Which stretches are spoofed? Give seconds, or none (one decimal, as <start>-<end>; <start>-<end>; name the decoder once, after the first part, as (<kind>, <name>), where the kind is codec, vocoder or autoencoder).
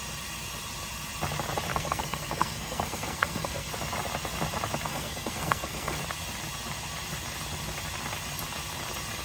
1.7-3.7 (codec, SNAC); 4.9-6.0